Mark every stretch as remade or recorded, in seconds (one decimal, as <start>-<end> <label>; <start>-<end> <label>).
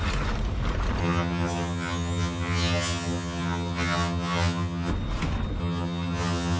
0.0-1.0 recorded; 1.0-4.9 remade; 4.9-5.6 recorded; 5.6-6.6 remade